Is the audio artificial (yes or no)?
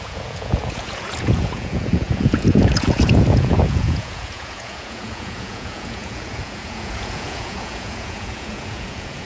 yes